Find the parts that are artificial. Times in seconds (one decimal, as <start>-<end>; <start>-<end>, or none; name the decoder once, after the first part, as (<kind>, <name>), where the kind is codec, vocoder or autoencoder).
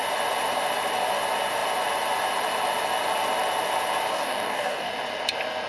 4.1-4.9 (codec, DAC)